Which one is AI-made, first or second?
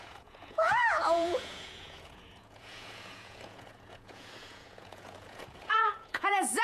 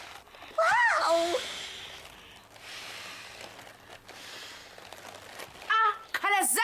first